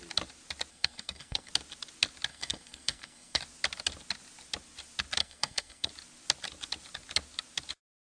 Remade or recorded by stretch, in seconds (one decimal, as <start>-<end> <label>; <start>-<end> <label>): 0.0-0.7 recorded; 0.7-1.5 remade; 1.5-2.3 recorded; 2.3-3.4 remade; 3.4-5.2 recorded; 5.2-5.9 remade; 5.9-8.1 recorded